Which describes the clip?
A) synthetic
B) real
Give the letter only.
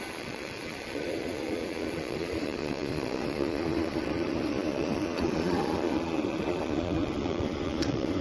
A